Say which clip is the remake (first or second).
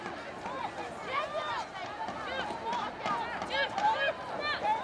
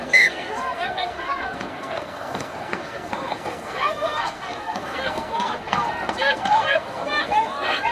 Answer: second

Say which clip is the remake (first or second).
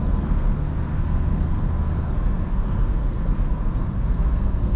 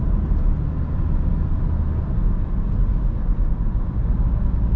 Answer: first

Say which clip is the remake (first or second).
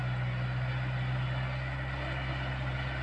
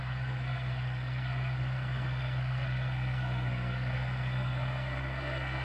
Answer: second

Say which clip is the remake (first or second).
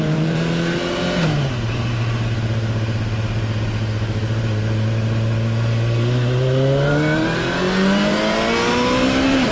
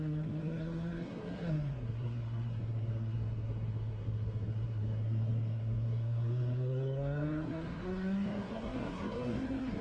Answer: second